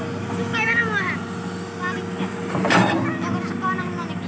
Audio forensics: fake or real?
real